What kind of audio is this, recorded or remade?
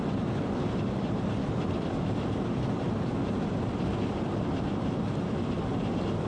recorded